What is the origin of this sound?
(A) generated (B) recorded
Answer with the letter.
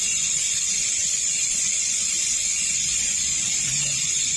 A